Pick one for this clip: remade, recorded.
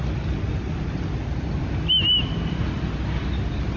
recorded